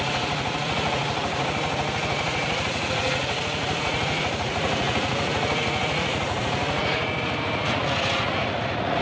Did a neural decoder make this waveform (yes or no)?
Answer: yes